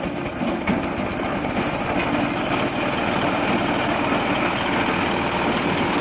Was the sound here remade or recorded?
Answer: recorded